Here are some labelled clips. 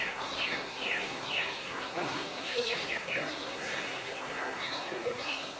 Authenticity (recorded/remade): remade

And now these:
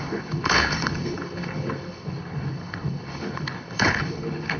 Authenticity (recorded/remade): remade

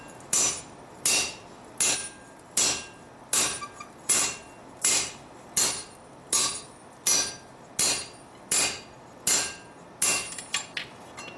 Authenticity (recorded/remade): recorded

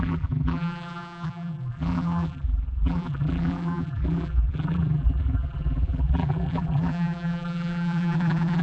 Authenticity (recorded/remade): remade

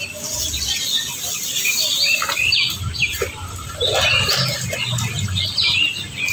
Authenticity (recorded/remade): recorded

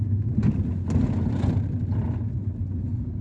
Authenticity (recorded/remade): recorded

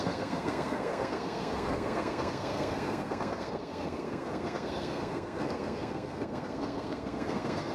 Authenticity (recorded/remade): remade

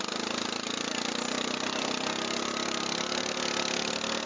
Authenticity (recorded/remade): recorded